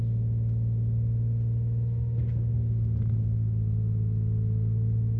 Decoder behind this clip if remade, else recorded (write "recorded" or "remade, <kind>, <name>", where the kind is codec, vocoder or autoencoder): recorded